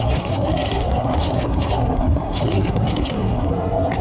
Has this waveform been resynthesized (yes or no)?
yes